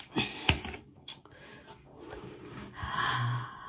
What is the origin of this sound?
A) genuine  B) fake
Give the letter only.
B